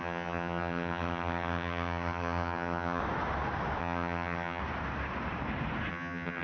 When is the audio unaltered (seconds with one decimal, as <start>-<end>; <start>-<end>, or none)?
3.0-3.8; 4.6-5.9